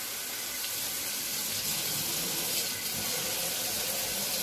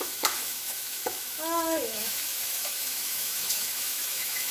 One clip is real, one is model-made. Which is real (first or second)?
first